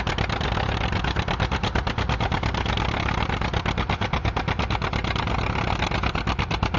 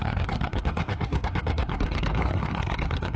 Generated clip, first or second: second